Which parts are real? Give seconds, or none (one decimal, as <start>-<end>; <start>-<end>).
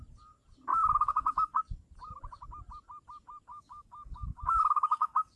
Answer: 0.0-0.7; 1.6-3.5